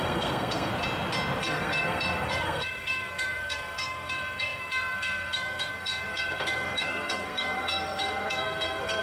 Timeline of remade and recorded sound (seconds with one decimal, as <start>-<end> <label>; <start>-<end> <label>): 0.0-0.7 remade; 0.7-1.4 recorded; 1.4-9.0 remade